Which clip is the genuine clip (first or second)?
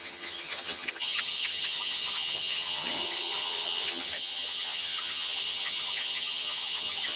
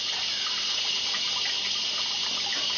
second